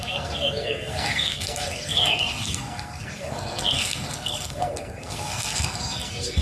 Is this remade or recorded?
remade